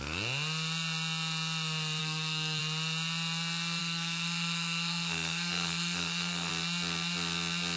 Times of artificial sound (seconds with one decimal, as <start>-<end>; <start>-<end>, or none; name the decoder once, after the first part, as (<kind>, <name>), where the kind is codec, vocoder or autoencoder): 2.0-2.6 (codec, SNAC); 3.8-6.5